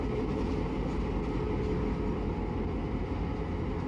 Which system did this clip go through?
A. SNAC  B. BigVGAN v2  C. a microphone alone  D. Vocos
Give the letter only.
C